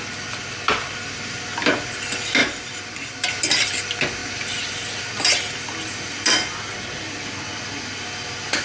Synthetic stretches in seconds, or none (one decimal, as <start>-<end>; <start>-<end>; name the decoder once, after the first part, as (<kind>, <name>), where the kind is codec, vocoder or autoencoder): 2.4-3.3 (vocoder, BigVGAN v2); 4.2-5.0